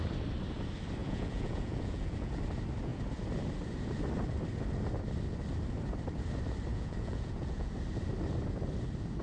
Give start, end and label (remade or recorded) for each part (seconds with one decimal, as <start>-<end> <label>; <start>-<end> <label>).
0.0-1.0 recorded; 1.0-2.4 remade; 2.4-6.7 recorded; 6.7-7.7 remade; 7.7-9.2 recorded